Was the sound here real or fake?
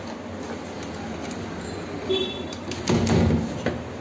real